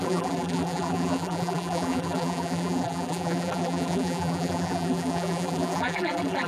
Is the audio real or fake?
fake